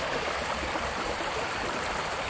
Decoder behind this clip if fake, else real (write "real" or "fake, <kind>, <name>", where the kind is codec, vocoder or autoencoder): fake, vocoder, BigVGAN v2